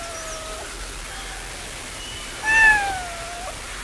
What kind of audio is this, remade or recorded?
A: recorded